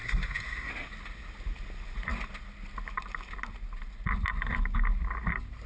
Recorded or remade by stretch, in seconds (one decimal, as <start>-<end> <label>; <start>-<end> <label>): 0.0-0.7 remade; 0.7-5.7 recorded